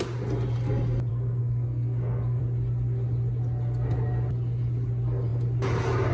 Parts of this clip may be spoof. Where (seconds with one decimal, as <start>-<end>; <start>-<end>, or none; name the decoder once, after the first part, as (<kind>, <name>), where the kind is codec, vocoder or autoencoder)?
1.1-2.4 (codec, SNAC)